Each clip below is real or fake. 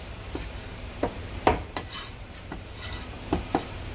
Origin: fake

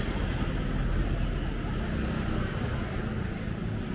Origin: real